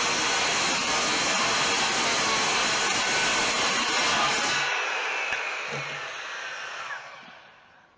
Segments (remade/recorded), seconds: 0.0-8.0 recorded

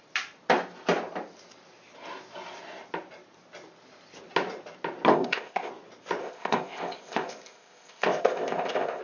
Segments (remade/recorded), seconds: 0.0-5.1 recorded; 5.1-5.7 remade; 5.7-6.2 recorded; 6.2-9.0 remade

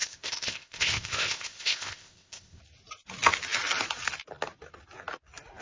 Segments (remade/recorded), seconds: 0.0-2.6 remade; 2.6-5.6 recorded

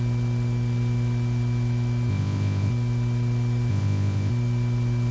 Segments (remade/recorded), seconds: 0.0-2.1 recorded; 2.1-2.7 remade; 2.7-3.7 recorded; 3.7-4.3 remade; 4.3-5.1 recorded

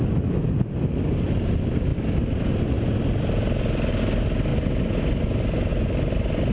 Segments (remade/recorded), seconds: 0.0-6.5 recorded

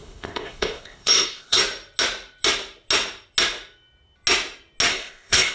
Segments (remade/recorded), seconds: 0.0-1.6 remade; 1.6-4.9 recorded; 4.9-5.5 remade